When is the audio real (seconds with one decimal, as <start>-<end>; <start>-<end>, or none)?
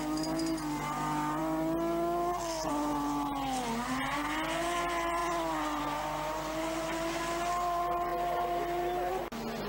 0.0-9.7